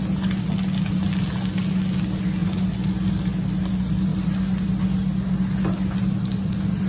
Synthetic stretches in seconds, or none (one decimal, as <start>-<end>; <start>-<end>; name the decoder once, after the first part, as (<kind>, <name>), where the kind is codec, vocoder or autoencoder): none